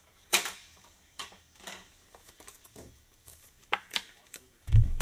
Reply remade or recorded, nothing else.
remade